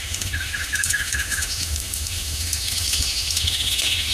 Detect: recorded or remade remade